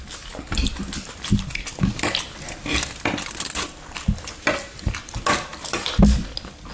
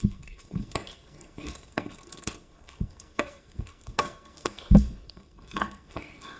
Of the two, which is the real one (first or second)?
first